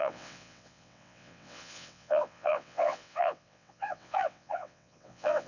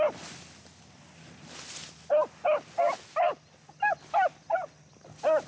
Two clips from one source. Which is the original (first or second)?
second